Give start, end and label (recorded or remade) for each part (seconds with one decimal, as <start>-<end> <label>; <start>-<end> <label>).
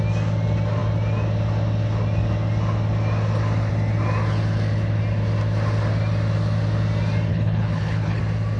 0.0-7.3 recorded; 7.3-8.2 remade; 8.2-8.6 recorded